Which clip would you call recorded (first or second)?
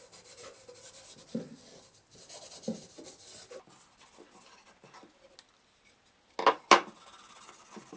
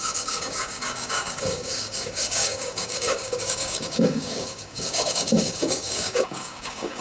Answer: first